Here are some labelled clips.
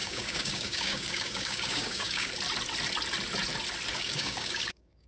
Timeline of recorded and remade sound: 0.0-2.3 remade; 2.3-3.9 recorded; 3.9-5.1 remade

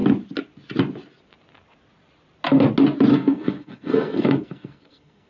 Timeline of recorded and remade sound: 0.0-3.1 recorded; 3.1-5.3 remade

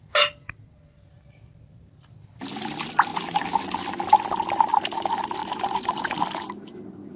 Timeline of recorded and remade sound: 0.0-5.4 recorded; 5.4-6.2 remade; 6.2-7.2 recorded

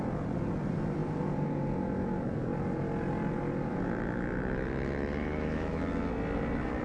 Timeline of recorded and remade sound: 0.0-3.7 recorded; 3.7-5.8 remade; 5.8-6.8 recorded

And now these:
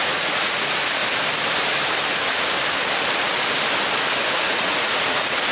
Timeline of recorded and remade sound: 0.0-1.0 remade; 1.0-4.3 recorded; 4.3-5.5 remade